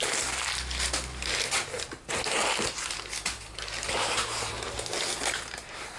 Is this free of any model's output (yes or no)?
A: yes